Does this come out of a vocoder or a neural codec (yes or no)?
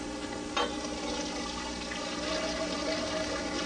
no